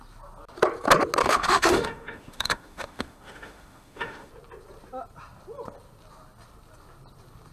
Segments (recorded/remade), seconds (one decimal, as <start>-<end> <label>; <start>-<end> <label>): 0.0-1.2 recorded; 1.2-4.3 remade; 4.3-7.5 recorded